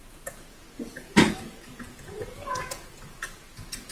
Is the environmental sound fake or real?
fake